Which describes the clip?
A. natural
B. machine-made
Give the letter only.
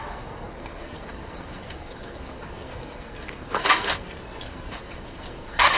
B